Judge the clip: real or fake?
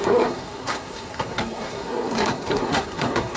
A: fake